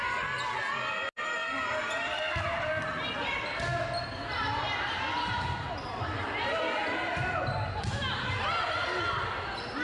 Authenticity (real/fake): real